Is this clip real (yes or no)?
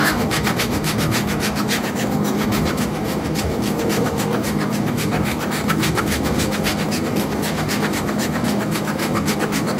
no